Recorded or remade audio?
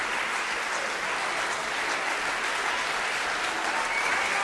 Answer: recorded